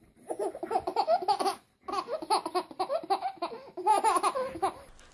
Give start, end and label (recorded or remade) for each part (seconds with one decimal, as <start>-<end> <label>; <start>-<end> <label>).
0.0-5.1 recorded